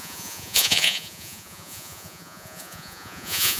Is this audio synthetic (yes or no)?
yes